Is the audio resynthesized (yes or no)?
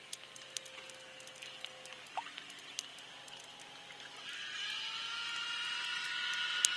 no